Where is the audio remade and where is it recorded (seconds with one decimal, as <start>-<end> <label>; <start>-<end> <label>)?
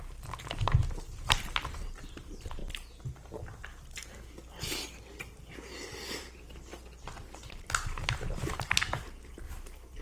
0.0-2.6 remade; 2.6-3.3 recorded; 3.3-4.0 remade; 4.0-5.2 recorded; 5.2-6.7 remade; 6.7-7.6 recorded; 7.6-10.0 remade